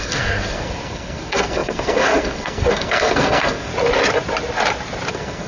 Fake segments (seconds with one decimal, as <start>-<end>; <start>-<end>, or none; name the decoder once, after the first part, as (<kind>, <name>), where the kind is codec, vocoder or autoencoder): 0.0-3.7 (codec, SNAC); 5.1-5.5

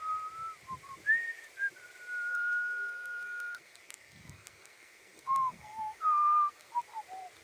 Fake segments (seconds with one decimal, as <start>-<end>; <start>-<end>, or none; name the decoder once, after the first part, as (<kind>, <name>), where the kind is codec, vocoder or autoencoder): 2.3-6.7 (codec, SNAC)